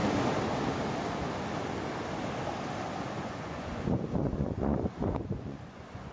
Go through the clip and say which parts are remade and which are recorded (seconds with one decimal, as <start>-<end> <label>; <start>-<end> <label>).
0.0-3.1 recorded; 3.1-6.1 remade